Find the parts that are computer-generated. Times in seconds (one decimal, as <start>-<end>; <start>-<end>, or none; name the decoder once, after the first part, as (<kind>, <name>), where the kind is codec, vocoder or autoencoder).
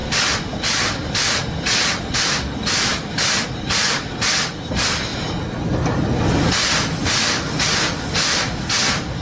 none